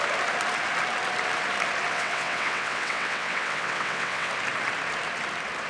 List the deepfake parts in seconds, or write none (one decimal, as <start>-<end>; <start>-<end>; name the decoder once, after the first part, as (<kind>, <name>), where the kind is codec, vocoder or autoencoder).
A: 1.9-4.3 (vocoder, WaveNeXt)